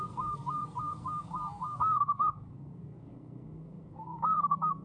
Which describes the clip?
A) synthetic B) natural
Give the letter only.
A